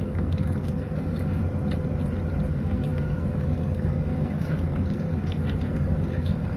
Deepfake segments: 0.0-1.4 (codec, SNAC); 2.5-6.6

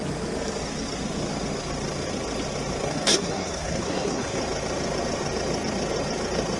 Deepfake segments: 2.8-4.4 (codec, SNAC)

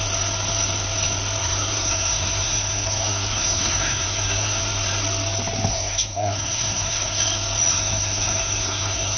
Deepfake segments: 1.4-4.6 (codec, SNAC); 5.7-7.2; 7.7-9.2